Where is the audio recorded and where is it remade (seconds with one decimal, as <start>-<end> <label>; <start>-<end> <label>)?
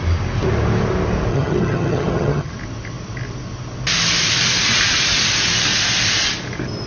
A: 0.0-1.3 recorded; 1.3-2.5 remade; 2.5-6.9 recorded